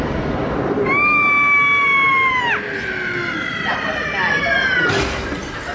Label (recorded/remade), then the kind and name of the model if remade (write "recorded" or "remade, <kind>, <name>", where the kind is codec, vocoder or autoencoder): recorded